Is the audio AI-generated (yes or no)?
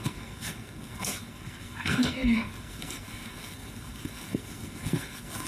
yes